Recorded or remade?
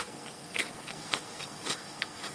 remade